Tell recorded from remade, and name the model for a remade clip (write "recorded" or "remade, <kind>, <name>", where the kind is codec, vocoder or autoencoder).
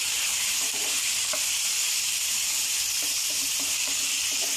remade, vocoder, BigVGAN v2